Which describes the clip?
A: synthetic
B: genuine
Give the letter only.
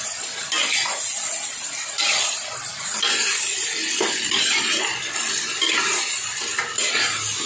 B